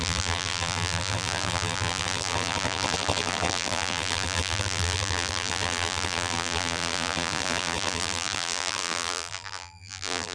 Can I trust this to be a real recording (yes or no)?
no